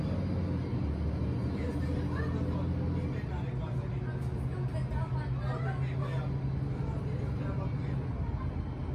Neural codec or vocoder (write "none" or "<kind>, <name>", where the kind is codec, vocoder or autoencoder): none